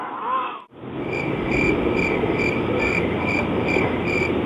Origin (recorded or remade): remade